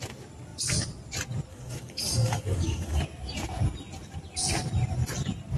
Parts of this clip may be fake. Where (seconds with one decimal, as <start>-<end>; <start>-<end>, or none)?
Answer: 1.5-3.0